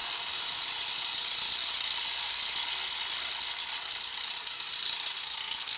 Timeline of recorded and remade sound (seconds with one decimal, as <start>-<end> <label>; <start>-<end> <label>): 0.0-5.2 recorded; 5.2-5.8 remade